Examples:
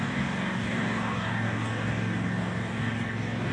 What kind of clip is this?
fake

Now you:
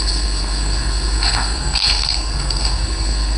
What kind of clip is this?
fake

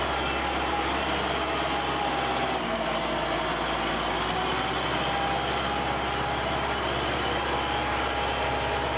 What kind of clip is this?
real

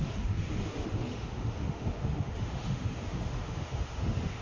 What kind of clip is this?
fake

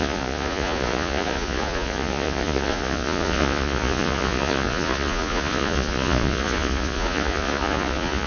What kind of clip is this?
fake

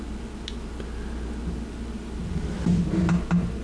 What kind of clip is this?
real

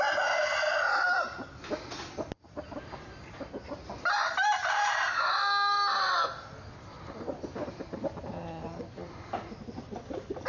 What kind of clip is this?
real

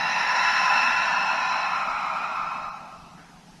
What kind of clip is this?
real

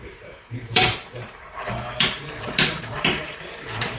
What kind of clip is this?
fake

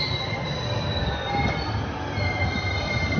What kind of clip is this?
real